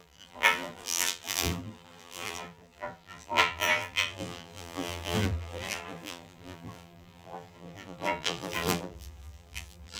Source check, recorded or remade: remade